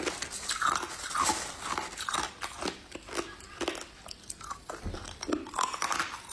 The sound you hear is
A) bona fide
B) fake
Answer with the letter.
A